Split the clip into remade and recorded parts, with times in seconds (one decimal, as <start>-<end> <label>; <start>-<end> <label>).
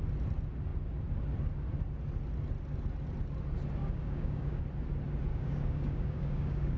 0.0-3.8 recorded; 3.8-4.6 remade; 4.6-5.3 recorded; 5.3-6.8 remade